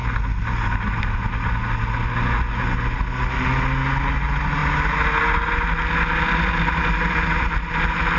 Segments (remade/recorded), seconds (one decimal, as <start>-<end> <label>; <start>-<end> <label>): 0.0-8.2 recorded